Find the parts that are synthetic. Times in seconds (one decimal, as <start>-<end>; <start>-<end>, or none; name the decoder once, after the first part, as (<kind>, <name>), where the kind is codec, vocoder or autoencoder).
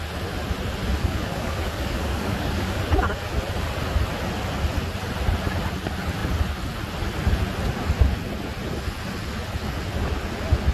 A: 1.0-2.8 (codec, DAC)